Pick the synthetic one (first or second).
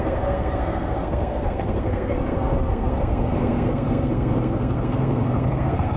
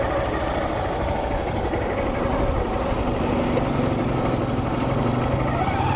first